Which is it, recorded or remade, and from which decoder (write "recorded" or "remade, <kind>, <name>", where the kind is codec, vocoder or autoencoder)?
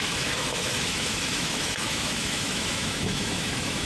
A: remade, autoencoder, DAC-VAE